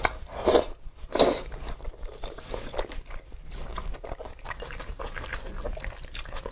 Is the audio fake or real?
real